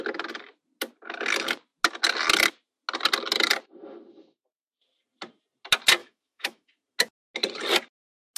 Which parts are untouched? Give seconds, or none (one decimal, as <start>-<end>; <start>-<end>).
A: 0.0-6.0; 6.7-8.4